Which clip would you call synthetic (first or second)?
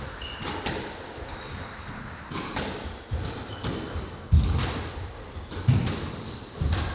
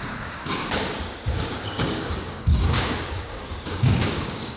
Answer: second